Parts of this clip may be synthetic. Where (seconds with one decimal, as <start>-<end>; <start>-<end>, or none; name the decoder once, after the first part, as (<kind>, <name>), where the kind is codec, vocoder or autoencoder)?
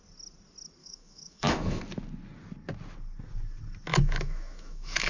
0.8-1.8 (autoencoder, DAC-VAE); 3.9-5.1